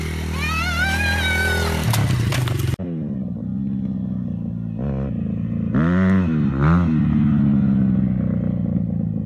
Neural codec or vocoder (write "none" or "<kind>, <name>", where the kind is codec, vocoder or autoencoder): none